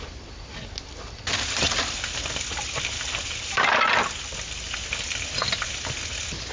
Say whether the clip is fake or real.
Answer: real